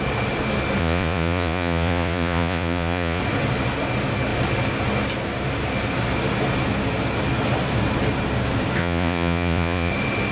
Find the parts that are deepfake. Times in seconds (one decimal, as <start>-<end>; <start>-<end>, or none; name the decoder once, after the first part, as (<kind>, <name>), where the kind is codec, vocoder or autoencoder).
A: 0.8-3.2 (vocoder, Vocos); 8.8-9.9